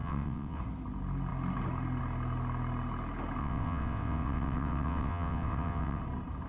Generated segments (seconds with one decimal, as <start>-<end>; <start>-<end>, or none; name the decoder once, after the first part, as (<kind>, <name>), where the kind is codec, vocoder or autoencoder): 0.0-0.6 (vocoder, WaveNeXt); 3.4-6.0

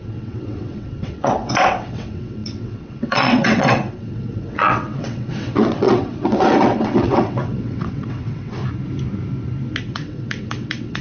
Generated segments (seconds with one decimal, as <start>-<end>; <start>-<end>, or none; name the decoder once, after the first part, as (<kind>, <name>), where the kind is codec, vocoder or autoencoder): 0.0-8.6 (vocoder, WaveNeXt); 9.8-11.0

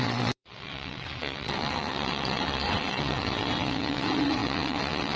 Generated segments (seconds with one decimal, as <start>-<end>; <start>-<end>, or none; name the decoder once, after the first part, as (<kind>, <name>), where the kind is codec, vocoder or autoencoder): 0.0-5.2 (vocoder, WaveNeXt)